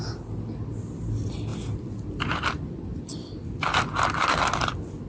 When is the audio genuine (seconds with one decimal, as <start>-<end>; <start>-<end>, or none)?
0.0-1.5; 3.5-5.1